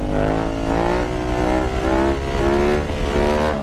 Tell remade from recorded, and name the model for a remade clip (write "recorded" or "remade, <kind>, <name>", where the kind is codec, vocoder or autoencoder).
recorded